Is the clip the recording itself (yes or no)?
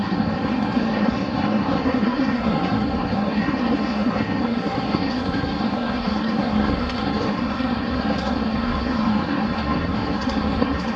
no